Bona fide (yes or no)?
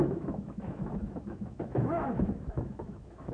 no